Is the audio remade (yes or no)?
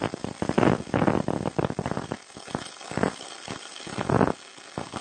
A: no